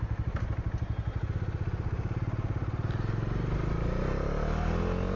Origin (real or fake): real